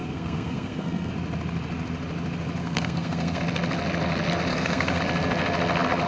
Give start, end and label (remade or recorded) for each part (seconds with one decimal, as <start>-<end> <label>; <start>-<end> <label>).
0.0-1.1 remade; 1.1-2.6 recorded; 2.6-3.4 remade; 3.4-4.5 recorded; 4.5-5.0 remade; 5.0-6.1 recorded